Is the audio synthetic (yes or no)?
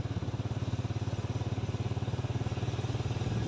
no